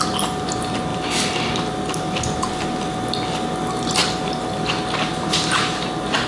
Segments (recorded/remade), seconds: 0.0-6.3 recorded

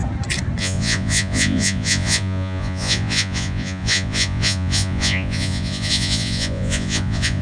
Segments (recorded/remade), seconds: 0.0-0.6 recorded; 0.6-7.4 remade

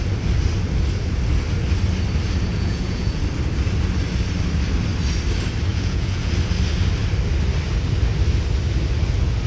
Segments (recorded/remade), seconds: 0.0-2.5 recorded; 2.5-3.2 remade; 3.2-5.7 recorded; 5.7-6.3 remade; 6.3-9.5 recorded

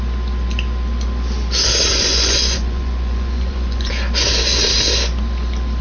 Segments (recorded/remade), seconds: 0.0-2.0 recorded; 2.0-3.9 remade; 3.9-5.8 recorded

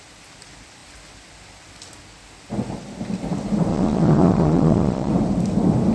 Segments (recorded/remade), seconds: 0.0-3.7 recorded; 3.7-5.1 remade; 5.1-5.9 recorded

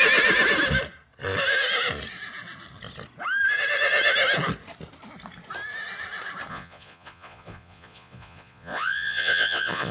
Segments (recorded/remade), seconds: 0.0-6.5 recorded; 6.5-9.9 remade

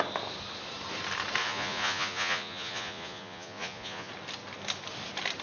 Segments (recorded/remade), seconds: 0.0-1.4 recorded; 1.4-4.1 remade; 4.1-5.4 recorded